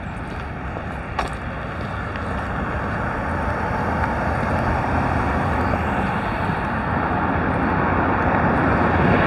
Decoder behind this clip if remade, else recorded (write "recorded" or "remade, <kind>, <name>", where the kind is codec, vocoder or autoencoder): recorded